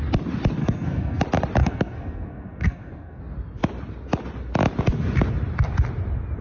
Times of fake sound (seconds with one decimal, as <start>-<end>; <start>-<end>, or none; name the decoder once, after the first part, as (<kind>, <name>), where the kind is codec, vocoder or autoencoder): 0.6-1.2 (codec, SNAC); 1.6-3.2